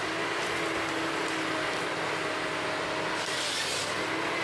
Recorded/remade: recorded